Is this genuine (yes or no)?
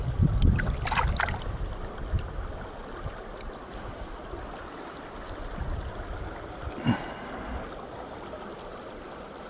yes